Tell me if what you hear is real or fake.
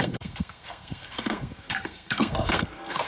fake